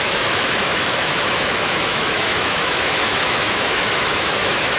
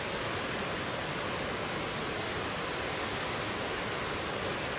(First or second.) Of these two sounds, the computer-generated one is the first